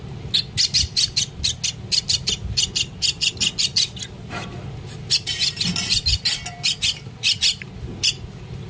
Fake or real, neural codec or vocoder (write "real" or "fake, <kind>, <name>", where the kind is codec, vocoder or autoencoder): real